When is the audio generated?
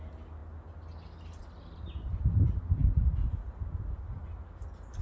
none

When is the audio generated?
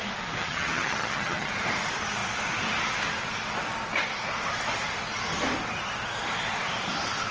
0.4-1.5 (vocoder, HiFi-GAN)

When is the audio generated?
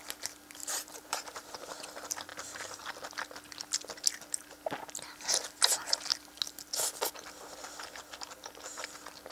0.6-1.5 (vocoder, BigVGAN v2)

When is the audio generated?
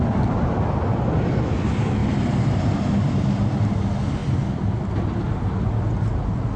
none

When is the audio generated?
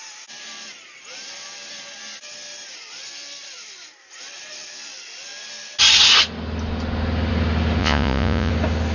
7.8-8.5 (vocoder, Vocos)